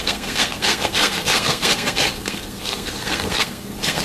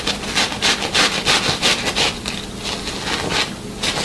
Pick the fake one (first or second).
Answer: first